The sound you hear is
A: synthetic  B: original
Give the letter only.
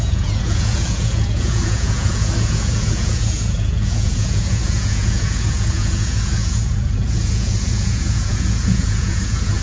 A